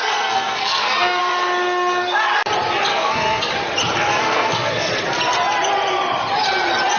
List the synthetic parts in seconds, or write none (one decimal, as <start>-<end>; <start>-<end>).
0.0-1.2; 2.9-3.5; 4.1-4.9